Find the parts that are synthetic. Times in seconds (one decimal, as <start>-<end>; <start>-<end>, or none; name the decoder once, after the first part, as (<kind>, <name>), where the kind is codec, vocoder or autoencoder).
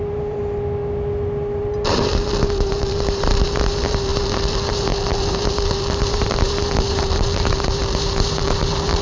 0.0-0.4 (vocoder, BigVGAN v2); 1.6-9.0